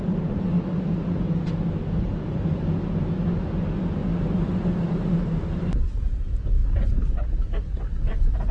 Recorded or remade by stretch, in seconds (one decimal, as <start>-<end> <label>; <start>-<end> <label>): 0.0-8.5 recorded